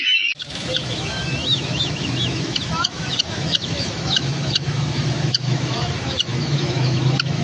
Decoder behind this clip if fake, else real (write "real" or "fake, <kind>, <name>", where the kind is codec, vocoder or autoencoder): fake, autoencoder, DAC-VAE